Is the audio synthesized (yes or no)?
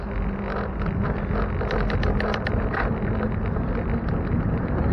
no